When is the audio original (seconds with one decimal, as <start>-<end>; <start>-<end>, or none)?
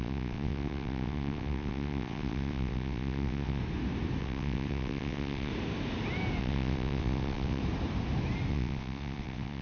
3.6-4.2; 5.5-6.4; 7.6-8.5